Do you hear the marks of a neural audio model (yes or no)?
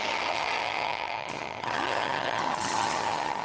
yes